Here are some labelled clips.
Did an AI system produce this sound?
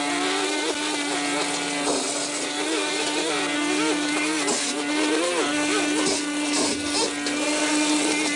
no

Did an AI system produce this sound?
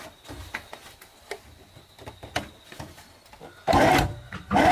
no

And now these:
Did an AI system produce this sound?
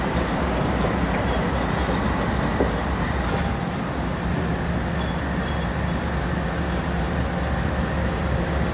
no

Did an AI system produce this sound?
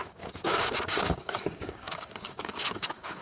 yes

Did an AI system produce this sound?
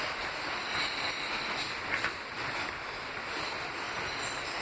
no